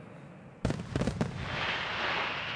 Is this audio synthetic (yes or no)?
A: no